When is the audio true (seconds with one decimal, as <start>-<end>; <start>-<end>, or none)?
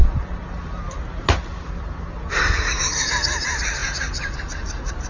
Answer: 0.0-5.1